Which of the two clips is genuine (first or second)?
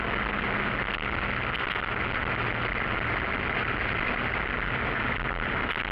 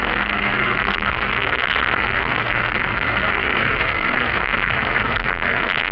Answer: first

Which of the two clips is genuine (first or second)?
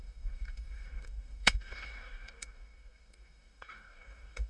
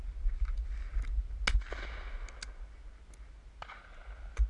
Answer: second